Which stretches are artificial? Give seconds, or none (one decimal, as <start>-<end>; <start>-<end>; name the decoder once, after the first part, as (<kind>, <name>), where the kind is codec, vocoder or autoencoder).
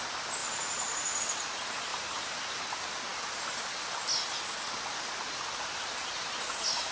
0.4-1.2 (vocoder, BigVGAN v2); 1.9-2.6